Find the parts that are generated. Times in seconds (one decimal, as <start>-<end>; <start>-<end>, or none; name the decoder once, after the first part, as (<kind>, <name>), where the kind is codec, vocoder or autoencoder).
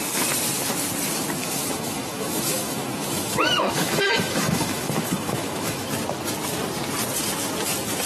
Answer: 1.4-5.9 (autoencoder, DAC-VAE)